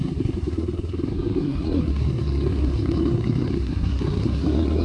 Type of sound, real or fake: fake